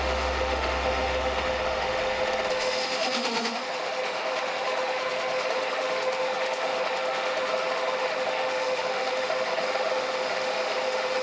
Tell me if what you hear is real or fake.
fake